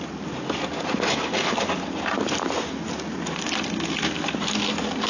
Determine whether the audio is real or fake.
fake